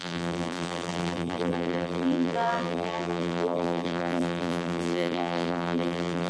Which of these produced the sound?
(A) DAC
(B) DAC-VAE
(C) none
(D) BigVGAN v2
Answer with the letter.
D